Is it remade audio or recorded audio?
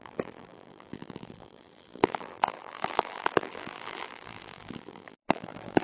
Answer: remade